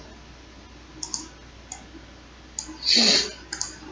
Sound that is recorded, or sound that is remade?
recorded